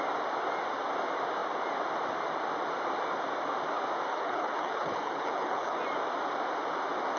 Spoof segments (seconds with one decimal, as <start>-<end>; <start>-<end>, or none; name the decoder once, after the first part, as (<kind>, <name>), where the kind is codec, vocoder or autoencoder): 4.1-5.8 (codec, HILCodec)